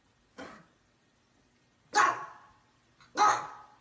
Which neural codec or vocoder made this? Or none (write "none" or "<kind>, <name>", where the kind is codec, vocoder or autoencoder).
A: none